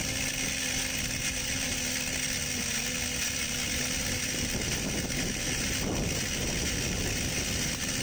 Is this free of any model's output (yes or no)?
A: yes